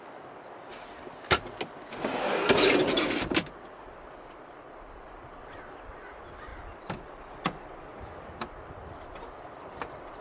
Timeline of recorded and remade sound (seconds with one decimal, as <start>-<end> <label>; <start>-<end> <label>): 0.0-10.2 recorded